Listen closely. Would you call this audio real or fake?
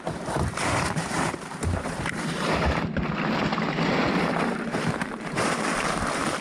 fake